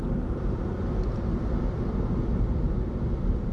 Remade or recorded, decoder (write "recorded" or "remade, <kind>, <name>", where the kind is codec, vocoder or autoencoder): recorded